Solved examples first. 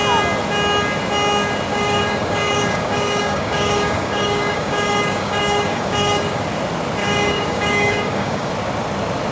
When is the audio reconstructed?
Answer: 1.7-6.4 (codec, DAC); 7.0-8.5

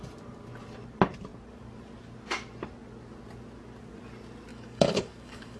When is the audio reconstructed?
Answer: 4.5-5.6 (codec, DAC)

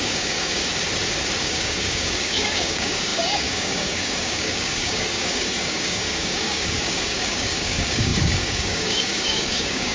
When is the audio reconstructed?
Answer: 0.0-0.6 (codec, DAC); 1.4-9.9

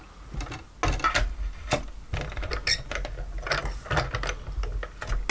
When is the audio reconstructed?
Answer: none

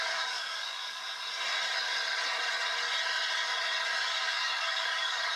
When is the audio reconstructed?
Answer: 0.0-1.0 (codec, DAC); 4.2-5.4

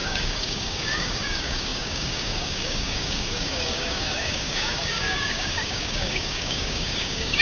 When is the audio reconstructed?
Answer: 0.0-7.4 (codec, DAC)

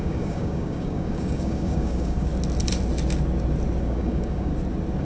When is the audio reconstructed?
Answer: 0.0-2.3 (codec, DAC); 3.8-4.5